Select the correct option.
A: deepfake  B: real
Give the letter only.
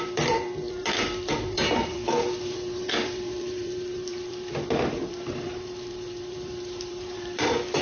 A